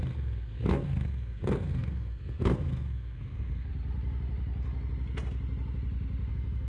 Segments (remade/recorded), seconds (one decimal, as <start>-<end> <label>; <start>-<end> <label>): 0.0-3.7 remade; 3.7-6.3 recorded; 6.3-6.7 remade